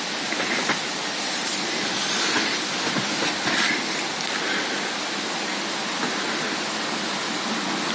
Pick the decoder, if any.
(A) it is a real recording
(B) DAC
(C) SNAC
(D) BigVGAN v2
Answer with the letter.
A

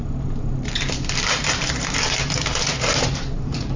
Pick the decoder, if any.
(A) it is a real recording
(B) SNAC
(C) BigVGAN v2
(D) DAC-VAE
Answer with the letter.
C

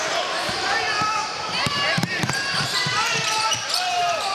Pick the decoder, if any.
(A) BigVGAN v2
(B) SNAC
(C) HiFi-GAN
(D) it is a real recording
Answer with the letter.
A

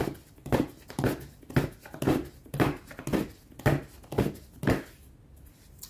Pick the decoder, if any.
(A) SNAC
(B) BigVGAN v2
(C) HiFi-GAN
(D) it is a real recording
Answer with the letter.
D